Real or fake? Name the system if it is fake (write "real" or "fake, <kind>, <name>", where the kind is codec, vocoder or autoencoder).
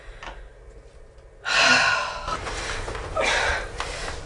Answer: real